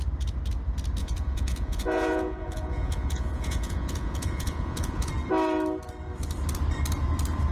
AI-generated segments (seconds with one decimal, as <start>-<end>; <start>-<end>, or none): 1.0-5.1